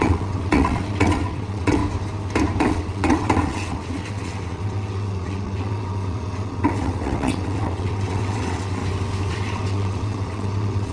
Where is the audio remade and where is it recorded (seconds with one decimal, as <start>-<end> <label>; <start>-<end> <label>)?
0.0-1.8 remade; 1.8-2.6 recorded; 2.6-8.8 remade; 8.8-9.3 recorded; 9.3-10.9 remade